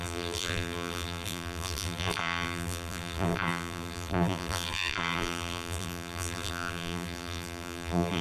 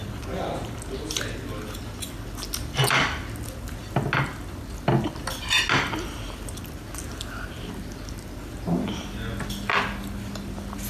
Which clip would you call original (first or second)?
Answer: second